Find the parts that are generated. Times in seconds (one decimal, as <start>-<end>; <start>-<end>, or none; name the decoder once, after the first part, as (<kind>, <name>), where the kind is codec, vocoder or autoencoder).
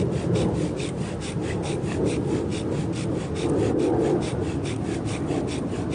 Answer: none